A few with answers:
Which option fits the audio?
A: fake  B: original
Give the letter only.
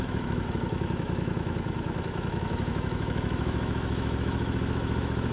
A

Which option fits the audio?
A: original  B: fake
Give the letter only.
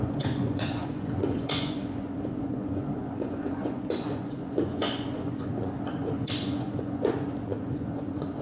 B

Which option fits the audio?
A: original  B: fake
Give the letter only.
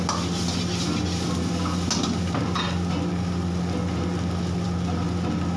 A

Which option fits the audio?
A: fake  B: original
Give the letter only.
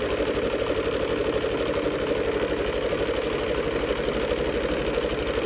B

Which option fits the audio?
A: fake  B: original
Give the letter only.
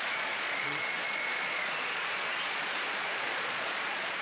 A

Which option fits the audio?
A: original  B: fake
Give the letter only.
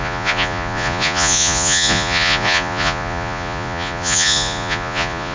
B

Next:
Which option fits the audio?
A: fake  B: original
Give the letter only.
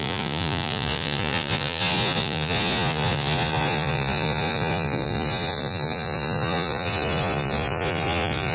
A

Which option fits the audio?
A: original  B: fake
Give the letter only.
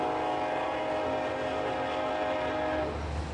A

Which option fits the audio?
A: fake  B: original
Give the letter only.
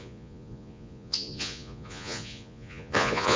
A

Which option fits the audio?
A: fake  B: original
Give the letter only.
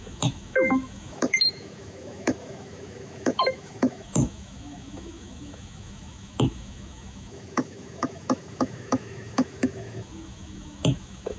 A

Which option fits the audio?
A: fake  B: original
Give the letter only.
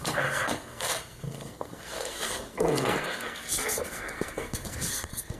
A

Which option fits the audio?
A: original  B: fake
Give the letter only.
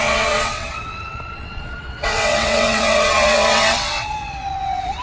B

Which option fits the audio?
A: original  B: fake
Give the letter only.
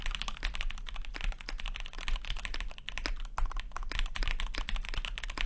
A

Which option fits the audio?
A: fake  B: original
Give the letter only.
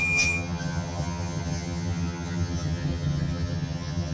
A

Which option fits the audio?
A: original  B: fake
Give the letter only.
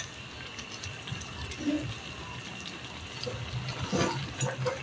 A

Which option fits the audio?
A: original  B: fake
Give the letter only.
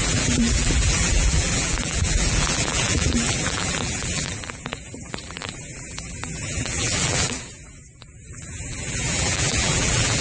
B